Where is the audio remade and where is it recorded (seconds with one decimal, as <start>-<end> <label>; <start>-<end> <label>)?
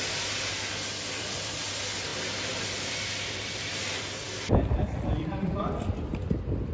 0.0-6.7 recorded